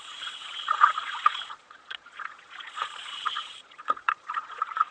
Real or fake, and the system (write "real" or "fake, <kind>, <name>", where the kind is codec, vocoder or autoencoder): fake, vocoder, Vocos